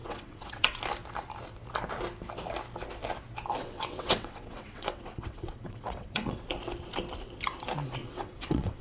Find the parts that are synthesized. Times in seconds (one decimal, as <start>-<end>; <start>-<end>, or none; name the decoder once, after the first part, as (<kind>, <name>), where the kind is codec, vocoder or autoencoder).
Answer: 0.0-0.7 (vocoder, WaveNeXt); 3.6-6.4; 8.0-8.8

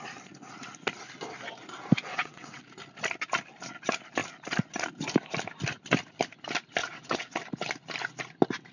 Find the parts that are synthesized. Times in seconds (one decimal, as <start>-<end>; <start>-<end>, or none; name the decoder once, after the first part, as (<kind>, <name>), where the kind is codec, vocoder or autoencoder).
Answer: 2.1-2.6 (vocoder, WaveNeXt); 6.8-7.4

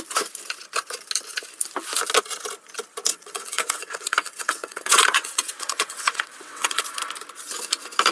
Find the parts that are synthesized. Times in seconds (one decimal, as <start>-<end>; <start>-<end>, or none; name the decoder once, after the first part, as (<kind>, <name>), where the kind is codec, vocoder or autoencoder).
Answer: 3.1-6.8 (vocoder, WaveNeXt)

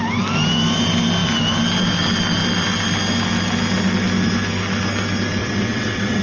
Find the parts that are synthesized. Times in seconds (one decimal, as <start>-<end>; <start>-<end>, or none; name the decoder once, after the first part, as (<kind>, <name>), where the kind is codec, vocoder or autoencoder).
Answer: 5.4-6.2 (vocoder, WaveNeXt)